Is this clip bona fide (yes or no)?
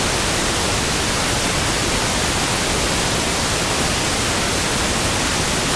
yes